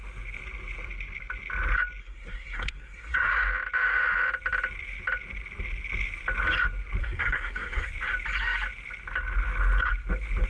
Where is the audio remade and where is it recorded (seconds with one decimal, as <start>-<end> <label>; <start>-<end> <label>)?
0.0-2.0 recorded; 2.0-3.3 remade; 3.3-7.0 recorded; 7.0-7.9 remade; 7.9-10.5 recorded